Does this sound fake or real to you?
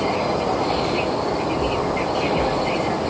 real